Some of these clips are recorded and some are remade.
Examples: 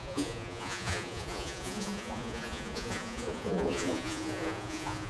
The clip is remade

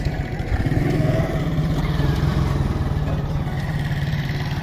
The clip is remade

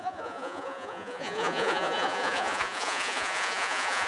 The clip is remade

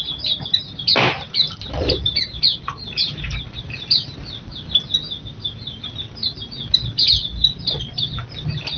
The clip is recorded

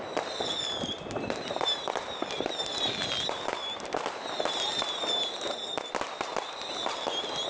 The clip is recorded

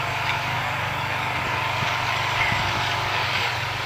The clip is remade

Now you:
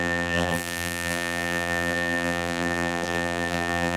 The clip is remade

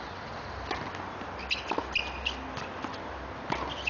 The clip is recorded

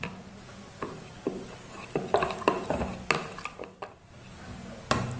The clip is recorded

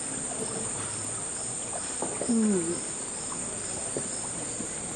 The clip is recorded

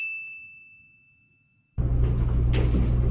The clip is recorded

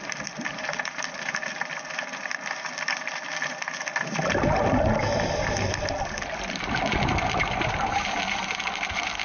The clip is recorded